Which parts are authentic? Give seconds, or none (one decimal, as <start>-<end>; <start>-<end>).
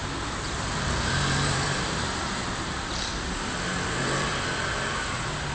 3.1-3.7; 4.3-5.5